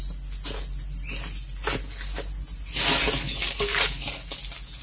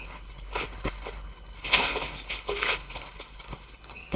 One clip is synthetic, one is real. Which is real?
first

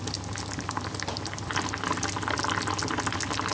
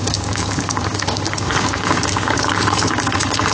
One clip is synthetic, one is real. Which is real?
first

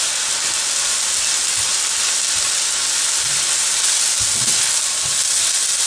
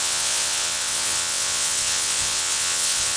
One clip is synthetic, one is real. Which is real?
first